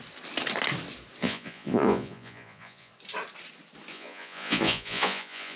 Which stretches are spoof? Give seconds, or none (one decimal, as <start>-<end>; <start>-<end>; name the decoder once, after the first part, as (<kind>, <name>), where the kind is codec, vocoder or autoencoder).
1.2-2.9 (vocoder, Vocos); 3.9-5.6